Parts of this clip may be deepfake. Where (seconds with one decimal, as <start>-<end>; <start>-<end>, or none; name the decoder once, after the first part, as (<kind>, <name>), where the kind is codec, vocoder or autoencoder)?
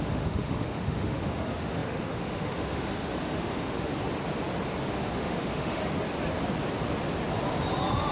0.0-3.9 (autoencoder, DAC-VAE); 4.9-5.8